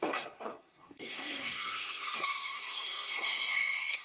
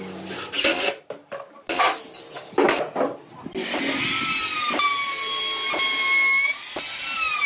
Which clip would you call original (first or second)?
second